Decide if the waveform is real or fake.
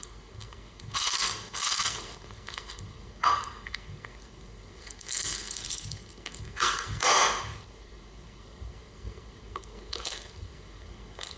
fake